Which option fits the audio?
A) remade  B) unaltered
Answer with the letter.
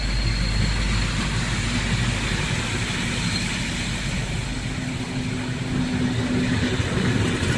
B